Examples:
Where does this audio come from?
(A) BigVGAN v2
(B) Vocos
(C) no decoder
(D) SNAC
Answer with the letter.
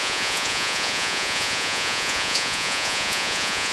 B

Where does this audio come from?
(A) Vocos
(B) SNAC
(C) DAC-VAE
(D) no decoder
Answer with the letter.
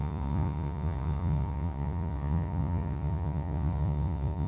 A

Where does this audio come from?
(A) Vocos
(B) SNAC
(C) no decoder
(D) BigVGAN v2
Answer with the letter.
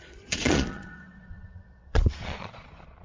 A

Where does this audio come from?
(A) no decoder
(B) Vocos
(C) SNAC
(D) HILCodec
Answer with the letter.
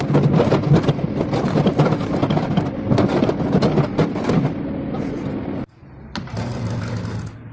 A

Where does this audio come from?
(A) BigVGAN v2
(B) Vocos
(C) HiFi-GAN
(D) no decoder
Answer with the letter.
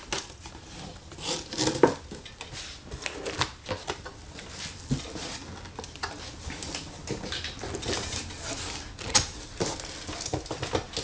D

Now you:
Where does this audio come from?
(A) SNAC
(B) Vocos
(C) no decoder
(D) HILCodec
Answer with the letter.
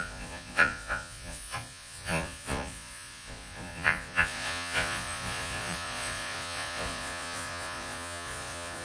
B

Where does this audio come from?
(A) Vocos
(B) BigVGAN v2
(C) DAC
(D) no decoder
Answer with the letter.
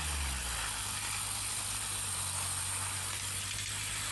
D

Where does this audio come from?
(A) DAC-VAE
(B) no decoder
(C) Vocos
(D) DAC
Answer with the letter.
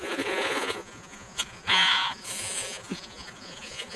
C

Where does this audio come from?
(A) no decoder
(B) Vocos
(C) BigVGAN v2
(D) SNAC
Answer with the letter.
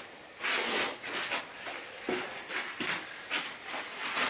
A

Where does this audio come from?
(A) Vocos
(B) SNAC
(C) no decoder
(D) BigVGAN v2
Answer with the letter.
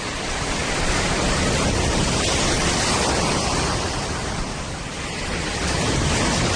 C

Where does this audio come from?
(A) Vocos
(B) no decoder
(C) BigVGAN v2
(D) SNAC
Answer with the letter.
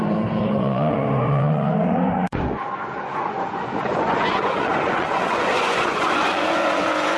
A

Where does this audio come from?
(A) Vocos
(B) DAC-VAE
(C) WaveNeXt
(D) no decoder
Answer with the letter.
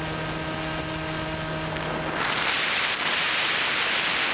D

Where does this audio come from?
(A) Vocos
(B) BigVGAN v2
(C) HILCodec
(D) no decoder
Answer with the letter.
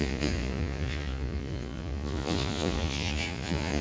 A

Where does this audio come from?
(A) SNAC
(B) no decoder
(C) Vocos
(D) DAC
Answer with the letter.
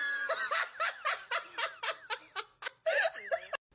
B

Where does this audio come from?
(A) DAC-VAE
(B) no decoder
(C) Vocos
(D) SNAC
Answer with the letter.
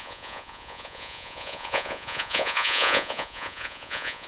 C